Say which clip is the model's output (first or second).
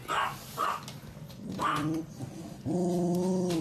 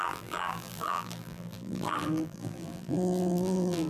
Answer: second